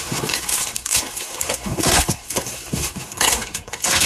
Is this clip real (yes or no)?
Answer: no